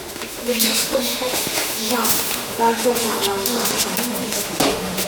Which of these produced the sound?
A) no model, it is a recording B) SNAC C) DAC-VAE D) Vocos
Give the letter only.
C